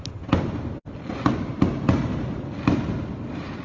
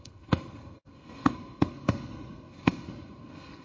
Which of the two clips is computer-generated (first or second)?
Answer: second